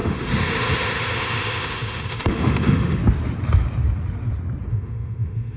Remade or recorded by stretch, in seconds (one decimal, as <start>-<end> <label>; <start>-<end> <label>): 0.0-3.0 remade; 3.0-4.7 recorded; 4.7-5.6 remade